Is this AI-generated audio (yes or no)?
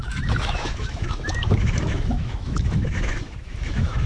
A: yes